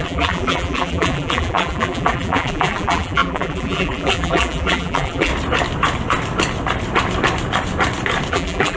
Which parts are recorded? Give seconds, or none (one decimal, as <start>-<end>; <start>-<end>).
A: 5.3-8.3